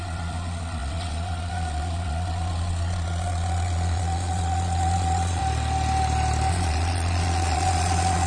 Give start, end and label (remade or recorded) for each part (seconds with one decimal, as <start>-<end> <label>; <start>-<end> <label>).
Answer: 0.0-5.4 remade; 5.4-6.5 recorded; 6.5-8.3 remade